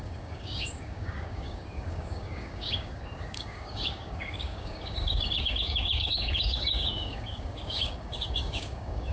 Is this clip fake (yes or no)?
yes